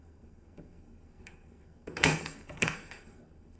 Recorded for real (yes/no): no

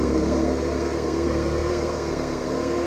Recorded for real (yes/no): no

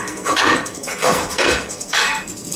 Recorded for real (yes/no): no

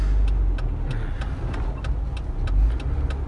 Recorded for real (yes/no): yes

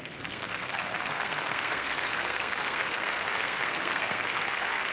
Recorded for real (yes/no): no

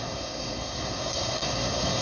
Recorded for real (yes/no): no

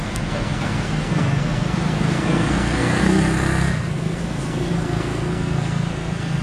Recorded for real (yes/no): no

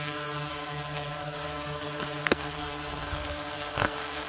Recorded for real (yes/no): no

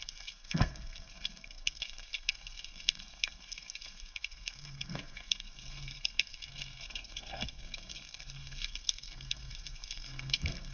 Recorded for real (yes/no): no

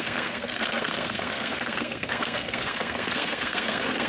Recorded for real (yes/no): no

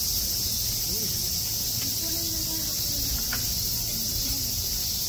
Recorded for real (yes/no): yes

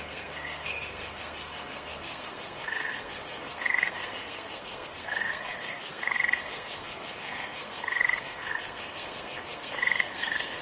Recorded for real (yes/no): no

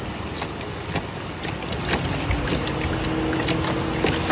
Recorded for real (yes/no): yes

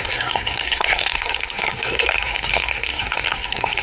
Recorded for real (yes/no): no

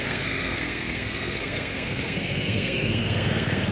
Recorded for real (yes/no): no